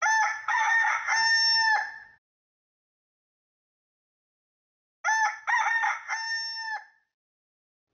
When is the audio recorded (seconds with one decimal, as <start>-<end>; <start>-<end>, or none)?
0.0-0.4; 0.9-7.9